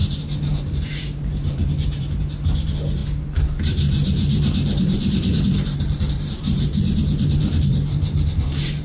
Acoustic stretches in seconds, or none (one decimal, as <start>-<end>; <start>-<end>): 3.0-3.6